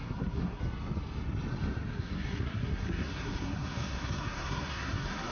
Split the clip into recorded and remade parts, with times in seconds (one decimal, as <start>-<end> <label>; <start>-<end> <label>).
0.0-0.6 remade; 0.6-1.9 recorded; 1.9-5.3 remade